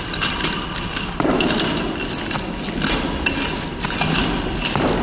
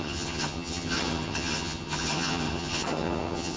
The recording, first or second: first